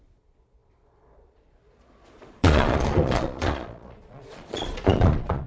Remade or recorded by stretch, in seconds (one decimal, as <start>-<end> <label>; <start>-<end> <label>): 0.0-5.5 remade